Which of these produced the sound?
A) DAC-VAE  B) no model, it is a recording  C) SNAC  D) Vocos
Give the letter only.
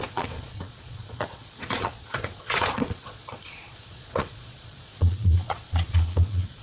D